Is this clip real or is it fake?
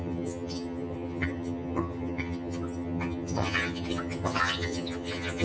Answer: fake